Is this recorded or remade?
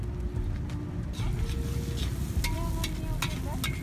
recorded